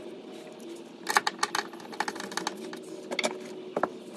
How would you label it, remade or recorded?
recorded